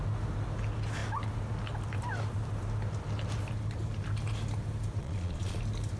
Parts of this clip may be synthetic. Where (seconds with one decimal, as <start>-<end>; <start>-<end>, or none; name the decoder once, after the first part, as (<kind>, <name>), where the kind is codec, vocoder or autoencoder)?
5.0-5.6 (vocoder, Vocos)